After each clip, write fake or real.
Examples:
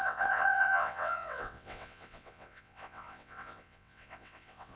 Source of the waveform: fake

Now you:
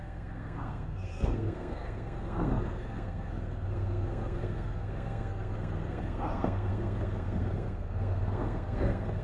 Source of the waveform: fake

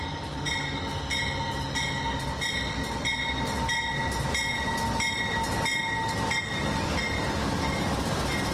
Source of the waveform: real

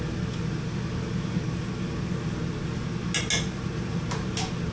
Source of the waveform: real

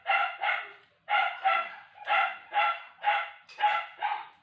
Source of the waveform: fake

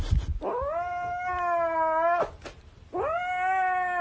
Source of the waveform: real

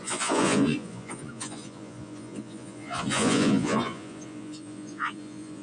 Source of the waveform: fake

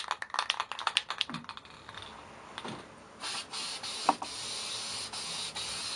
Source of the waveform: real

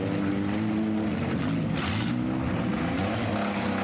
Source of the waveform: real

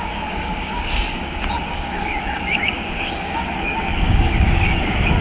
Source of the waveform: fake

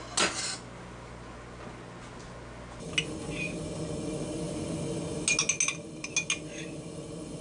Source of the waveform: real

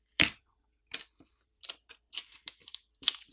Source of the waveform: fake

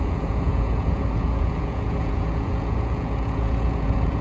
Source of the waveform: fake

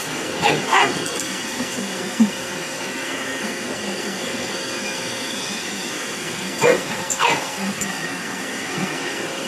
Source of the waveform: fake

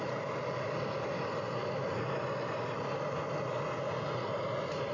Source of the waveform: real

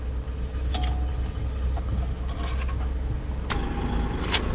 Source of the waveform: real